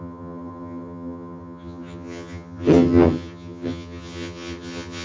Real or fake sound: fake